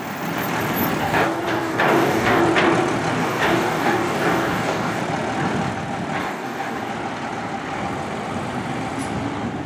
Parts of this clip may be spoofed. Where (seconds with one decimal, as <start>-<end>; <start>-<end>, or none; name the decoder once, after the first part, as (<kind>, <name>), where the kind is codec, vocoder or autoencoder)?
1.0-2.4 (codec, DAC); 3.2-5.0; 6.2-6.9